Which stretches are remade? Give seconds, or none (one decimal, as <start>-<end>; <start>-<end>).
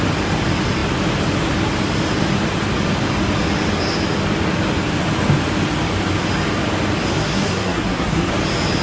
7.1-8.3